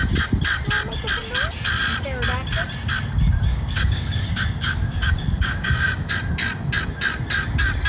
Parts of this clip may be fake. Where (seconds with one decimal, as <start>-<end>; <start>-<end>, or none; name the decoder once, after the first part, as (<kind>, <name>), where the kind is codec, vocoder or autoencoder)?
3.5-6.1 (codec, DAC)